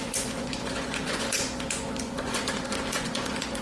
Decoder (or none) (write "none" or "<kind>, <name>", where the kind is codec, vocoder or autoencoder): vocoder, Vocos